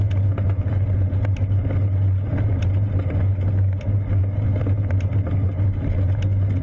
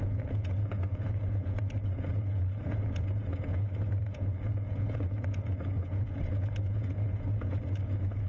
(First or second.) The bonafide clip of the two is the first